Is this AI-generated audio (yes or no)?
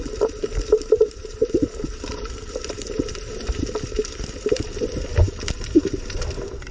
yes